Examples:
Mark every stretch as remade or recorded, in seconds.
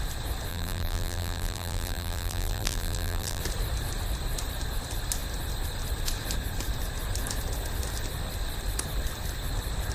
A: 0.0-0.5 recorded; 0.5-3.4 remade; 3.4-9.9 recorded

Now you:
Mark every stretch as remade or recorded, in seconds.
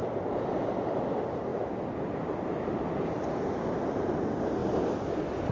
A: 0.0-5.5 recorded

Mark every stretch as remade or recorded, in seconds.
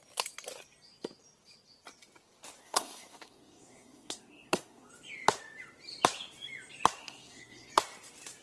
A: 0.0-2.6 recorded; 2.6-4.9 remade; 4.9-7.0 recorded; 7.0-7.7 remade; 7.7-8.4 recorded